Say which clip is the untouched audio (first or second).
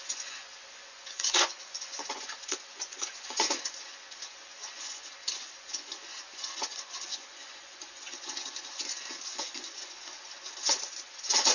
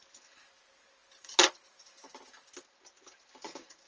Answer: second